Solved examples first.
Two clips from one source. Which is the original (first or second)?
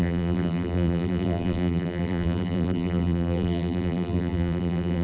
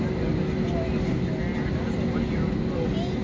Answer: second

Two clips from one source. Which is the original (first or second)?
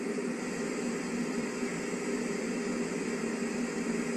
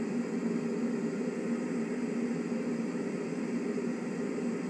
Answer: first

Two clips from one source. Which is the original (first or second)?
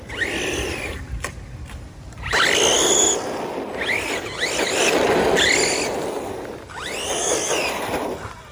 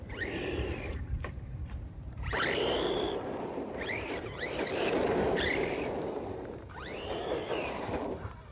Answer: first